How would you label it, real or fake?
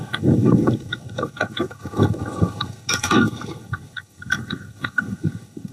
fake